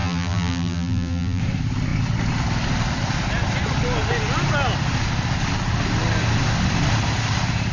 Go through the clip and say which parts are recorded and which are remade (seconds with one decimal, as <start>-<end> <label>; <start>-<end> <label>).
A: 0.0-1.4 remade; 1.4-7.7 recorded